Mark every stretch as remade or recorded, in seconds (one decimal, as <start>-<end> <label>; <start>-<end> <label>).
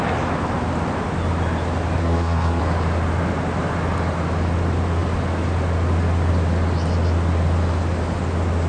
0.0-2.0 recorded; 2.0-2.6 remade; 2.6-8.7 recorded